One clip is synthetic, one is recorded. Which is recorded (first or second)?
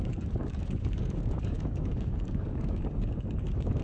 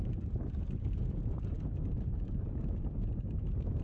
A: second